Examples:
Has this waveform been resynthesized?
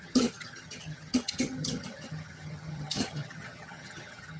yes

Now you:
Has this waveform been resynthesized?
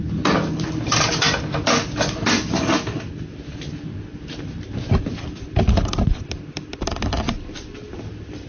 no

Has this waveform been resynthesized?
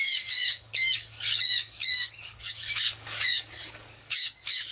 yes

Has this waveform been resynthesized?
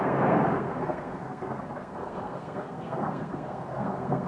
yes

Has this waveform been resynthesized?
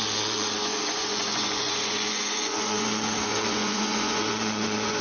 yes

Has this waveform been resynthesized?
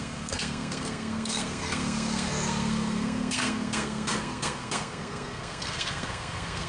yes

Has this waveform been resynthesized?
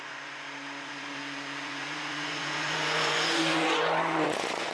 yes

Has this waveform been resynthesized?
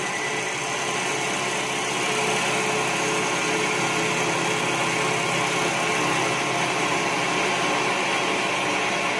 no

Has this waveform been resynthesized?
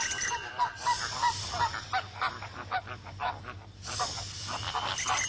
yes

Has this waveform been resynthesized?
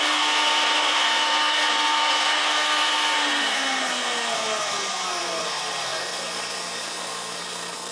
yes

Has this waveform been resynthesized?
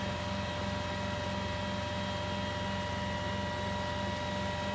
no